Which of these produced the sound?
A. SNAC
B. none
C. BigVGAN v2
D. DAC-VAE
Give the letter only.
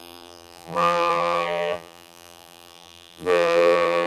C